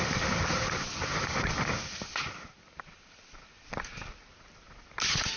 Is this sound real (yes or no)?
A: yes